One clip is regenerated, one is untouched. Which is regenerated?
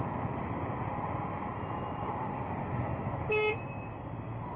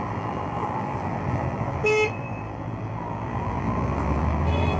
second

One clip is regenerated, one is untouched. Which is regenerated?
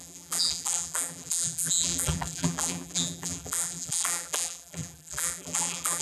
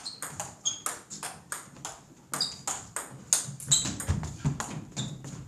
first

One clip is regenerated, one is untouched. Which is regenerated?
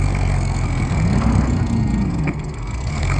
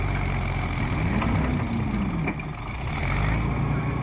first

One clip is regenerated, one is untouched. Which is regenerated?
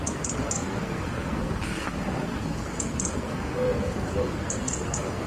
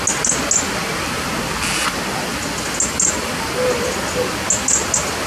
first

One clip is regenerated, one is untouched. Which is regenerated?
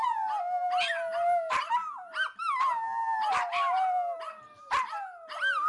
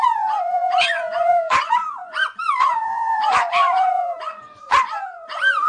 second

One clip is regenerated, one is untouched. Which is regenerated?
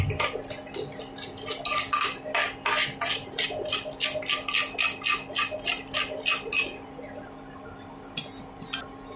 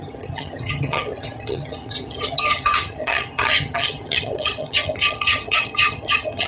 second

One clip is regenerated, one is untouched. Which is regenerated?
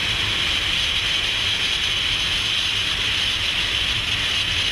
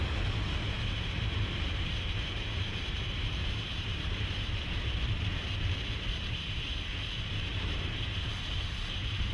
second